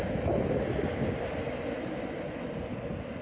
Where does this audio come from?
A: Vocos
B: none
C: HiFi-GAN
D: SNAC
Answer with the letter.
B